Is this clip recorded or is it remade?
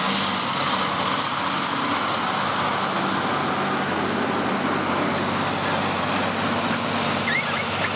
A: recorded